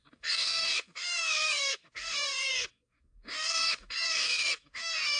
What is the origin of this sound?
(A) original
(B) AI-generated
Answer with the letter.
B